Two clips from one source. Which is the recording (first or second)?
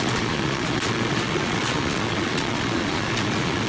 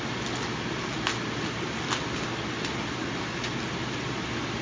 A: second